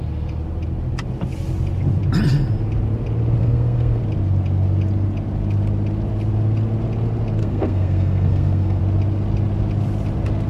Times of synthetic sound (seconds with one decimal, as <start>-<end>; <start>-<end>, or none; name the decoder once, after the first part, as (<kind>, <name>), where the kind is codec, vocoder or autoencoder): 3.4-4.0 (codec, SNAC); 7.4-8.8